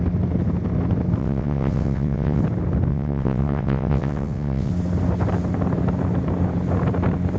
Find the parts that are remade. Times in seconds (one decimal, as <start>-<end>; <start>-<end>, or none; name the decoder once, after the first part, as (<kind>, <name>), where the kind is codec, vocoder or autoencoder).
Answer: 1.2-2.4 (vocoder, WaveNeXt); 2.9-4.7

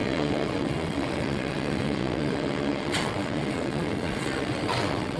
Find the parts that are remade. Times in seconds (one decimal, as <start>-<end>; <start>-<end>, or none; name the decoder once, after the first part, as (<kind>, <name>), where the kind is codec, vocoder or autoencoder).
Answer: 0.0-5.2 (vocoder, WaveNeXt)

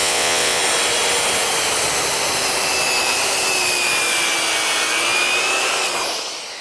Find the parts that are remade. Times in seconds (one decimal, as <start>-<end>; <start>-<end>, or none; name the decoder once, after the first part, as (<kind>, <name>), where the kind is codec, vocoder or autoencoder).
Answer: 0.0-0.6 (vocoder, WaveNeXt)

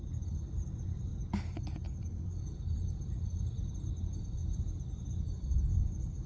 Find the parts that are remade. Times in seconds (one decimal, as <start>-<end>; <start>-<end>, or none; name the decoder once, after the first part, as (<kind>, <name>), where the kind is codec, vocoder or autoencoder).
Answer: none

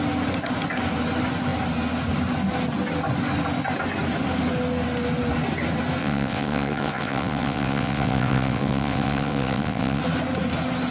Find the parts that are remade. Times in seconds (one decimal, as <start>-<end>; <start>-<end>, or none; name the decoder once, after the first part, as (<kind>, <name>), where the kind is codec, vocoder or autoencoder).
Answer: 6.0-10.0 (vocoder, WaveNeXt)

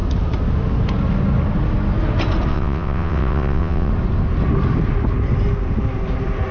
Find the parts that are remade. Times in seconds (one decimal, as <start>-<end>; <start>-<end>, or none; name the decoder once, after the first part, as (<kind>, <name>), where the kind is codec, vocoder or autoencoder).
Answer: 2.5-3.9 (vocoder, WaveNeXt)

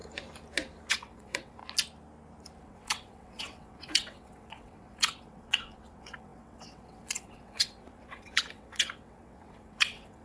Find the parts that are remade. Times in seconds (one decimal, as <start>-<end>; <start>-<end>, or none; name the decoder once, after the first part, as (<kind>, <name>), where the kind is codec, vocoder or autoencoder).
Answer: 0.9-1.6 (vocoder, WaveNeXt); 2.6-10.2

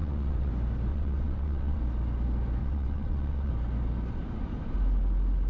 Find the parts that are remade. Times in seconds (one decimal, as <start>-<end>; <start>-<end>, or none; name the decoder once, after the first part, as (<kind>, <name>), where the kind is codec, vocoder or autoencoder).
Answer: 0.0-0.5 (vocoder, WaveNeXt); 0.9-1.8; 2.6-3.5